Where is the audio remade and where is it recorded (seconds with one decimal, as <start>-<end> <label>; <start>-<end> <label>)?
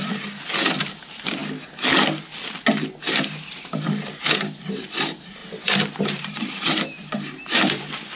0.0-1.4 remade; 1.4-4.7 recorded; 4.7-5.4 remade; 5.4-6.0 recorded; 6.0-8.2 remade